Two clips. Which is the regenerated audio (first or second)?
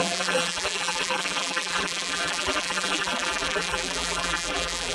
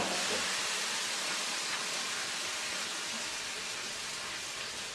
first